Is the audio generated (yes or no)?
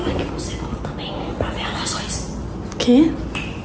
no